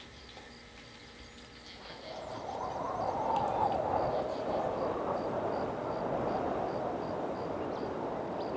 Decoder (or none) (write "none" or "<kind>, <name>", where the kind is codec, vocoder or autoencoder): none